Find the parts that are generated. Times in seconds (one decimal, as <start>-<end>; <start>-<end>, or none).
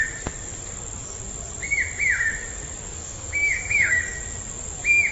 3.0-4.0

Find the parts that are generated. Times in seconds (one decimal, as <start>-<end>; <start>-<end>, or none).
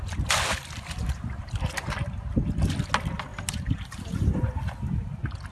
3.3-4.4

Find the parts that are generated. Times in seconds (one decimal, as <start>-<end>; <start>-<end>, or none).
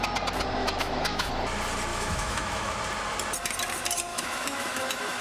0.6-1.3; 1.9-2.7; 4.1-5.2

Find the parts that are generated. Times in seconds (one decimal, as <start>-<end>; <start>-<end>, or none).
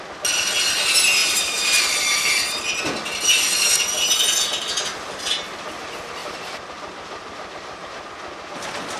1.2-2.8; 6.2-8.0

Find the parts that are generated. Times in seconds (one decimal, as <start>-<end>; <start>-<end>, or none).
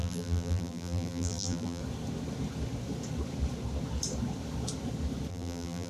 0.0-1.8; 5.3-5.9